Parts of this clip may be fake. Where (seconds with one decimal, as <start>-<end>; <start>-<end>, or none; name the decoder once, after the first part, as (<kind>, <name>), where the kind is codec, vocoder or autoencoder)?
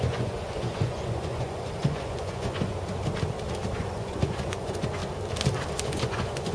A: 0.0-2.7 (vocoder, Vocos); 3.8-5.0; 5.8-6.5